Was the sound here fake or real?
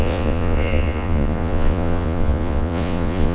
fake